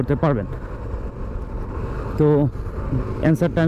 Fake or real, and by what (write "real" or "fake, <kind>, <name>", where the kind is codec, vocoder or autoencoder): real